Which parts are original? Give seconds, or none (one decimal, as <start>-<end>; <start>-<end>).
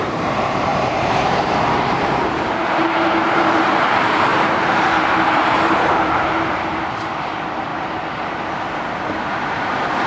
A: 7.7-9.2